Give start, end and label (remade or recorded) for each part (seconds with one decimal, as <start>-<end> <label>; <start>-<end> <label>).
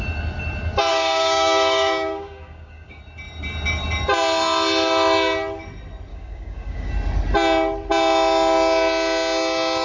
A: 0.0-0.9 recorded; 0.9-3.0 remade; 3.0-6.1 recorded; 6.1-6.9 remade; 6.9-9.8 recorded